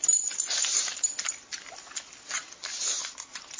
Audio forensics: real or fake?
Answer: real